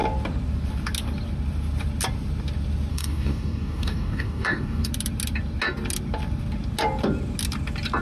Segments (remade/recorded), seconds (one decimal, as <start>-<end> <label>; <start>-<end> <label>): 0.0-2.9 recorded; 2.9-4.9 remade; 4.9-8.0 recorded